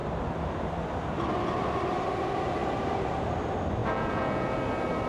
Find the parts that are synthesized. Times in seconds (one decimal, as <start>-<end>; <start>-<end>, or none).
3.8-4.6